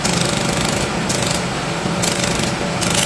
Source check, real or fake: real